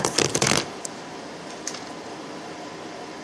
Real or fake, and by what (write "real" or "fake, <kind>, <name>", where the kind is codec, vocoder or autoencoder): fake, vocoder, BigVGAN v2